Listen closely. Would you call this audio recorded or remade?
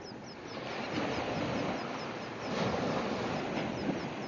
recorded